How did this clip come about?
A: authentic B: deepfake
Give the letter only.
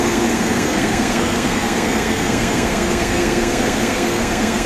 B